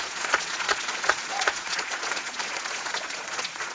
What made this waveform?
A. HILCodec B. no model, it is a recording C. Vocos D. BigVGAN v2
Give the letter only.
C